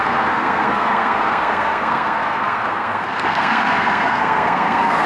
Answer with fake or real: fake